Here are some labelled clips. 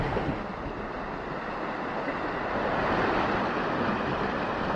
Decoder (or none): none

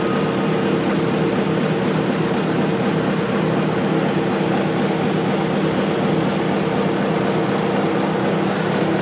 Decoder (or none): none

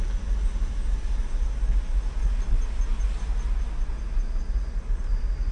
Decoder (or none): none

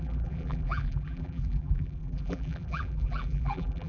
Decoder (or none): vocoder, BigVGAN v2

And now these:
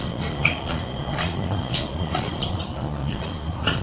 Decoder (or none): vocoder, Vocos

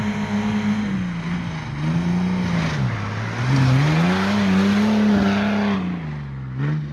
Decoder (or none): none